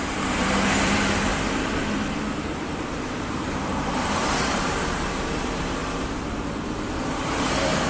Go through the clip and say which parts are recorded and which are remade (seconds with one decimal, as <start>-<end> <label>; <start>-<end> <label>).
0.0-1.3 remade; 1.3-2.3 recorded; 2.3-5.8 remade; 5.8-6.9 recorded; 6.9-7.9 remade